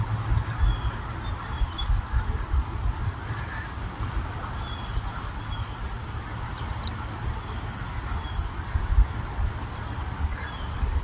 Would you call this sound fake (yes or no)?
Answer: no